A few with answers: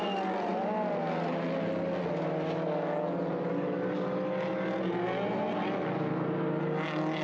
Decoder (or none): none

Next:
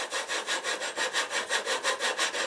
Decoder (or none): none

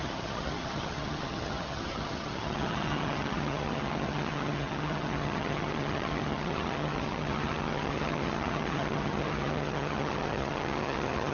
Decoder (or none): vocoder, HiFi-GAN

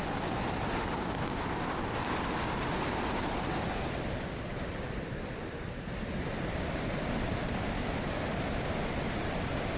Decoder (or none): none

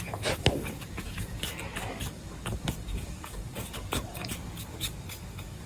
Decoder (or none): codec, DAC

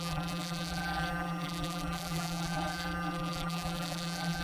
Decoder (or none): vocoder, BigVGAN v2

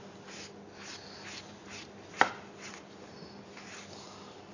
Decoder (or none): none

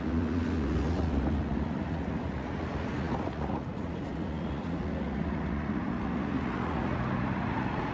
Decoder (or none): vocoder, Vocos